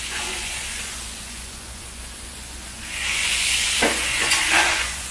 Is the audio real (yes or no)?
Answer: no